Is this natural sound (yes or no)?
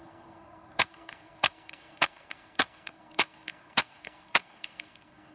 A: no